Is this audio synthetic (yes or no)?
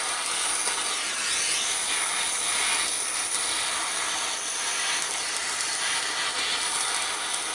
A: no